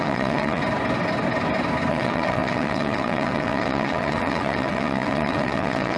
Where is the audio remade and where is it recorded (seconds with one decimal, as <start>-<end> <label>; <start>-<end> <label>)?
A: 0.0-0.6 remade; 0.6-1.9 recorded; 1.9-6.0 remade

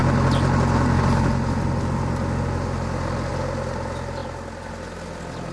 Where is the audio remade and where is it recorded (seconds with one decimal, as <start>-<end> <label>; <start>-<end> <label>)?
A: 0.0-5.5 recorded

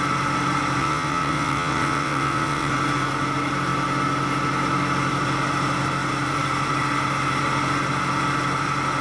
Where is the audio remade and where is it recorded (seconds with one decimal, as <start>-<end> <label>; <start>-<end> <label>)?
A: 0.0-0.8 recorded; 0.8-2.7 remade; 2.7-9.0 recorded

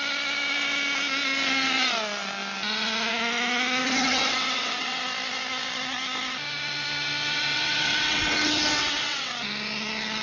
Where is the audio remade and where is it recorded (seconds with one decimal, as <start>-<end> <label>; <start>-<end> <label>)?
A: 0.0-3.8 recorded; 3.8-5.0 remade; 5.0-7.3 recorded; 7.3-9.3 remade; 9.3-10.2 recorded

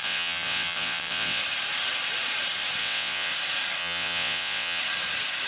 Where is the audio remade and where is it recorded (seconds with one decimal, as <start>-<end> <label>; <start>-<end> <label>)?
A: 0.0-1.4 remade; 1.4-2.8 recorded; 2.8-3.3 remade; 3.3-3.8 recorded; 3.8-4.8 remade; 4.8-5.5 recorded

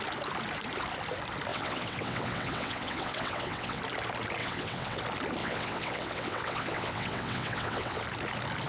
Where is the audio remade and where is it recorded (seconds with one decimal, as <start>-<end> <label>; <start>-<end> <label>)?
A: 0.0-1.5 recorded; 1.5-3.8 remade; 3.8-4.4 recorded; 4.4-5.0 remade; 5.0-5.4 recorded; 5.4-8.0 remade; 8.0-8.7 recorded